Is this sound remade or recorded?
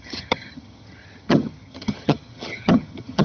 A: remade